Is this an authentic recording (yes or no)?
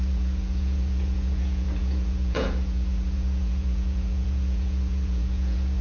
no